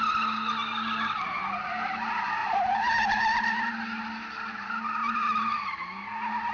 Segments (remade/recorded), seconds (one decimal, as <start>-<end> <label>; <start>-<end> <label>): 0.0-2.4 recorded; 2.4-3.7 remade; 3.7-5.0 recorded; 5.0-5.7 remade; 5.7-6.5 recorded